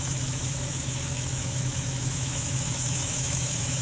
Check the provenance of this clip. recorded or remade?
remade